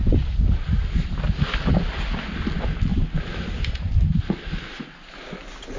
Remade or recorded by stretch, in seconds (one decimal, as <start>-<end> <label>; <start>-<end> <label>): 0.0-5.8 recorded